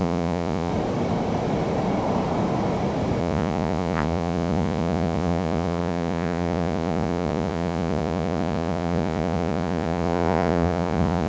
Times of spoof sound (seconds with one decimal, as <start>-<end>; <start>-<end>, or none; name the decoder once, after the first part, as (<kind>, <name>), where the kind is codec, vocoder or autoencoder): 0.0-0.7 (vocoder, Vocos); 3.2-11.3

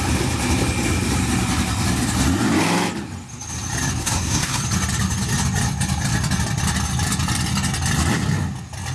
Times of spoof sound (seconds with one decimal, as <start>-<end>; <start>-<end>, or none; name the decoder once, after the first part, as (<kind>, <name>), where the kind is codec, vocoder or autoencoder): 4.0-4.6 (codec, SNAC)